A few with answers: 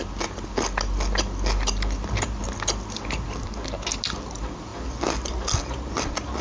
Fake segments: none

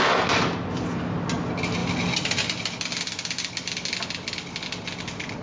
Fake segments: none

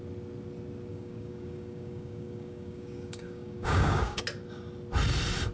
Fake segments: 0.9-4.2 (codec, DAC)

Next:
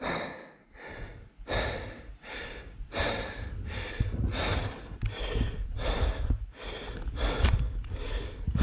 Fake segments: none

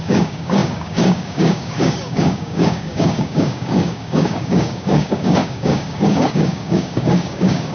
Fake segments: 0.0-7.7 (codec, DAC)

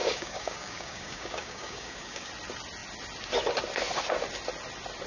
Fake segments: 0.0-2.3 (codec, DAC)

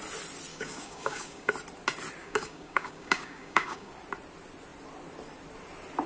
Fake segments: 0.5-1.5 (codec, DAC); 2.2-3.9